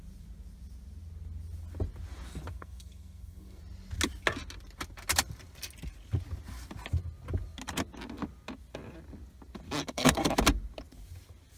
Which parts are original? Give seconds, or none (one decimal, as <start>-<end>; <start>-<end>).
0.0-2.5; 3.6-9.8; 10.3-11.6